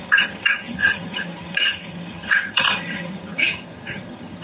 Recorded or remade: remade